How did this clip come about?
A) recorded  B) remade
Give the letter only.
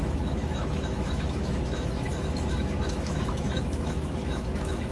B